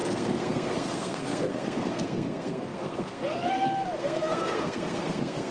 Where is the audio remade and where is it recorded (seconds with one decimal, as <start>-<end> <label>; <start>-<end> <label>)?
0.0-5.5 remade